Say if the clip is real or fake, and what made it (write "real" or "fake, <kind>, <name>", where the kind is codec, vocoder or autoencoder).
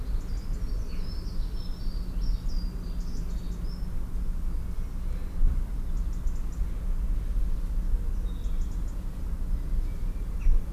real